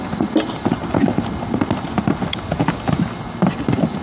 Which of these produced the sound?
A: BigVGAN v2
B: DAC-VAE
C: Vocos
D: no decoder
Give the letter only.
D